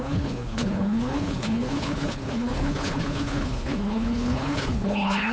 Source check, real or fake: fake